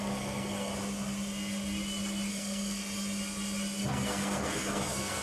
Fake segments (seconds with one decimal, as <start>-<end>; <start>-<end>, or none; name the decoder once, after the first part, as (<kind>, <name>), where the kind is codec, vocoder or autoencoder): 0.0-0.7 (codec, SNAC); 2.3-2.8; 3.8-5.2